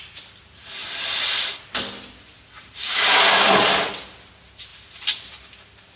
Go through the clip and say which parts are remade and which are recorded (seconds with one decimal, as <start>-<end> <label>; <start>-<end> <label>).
0.0-6.0 recorded